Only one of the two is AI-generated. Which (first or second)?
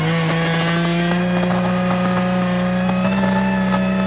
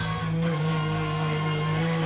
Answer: second